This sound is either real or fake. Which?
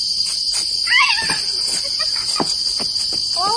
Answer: real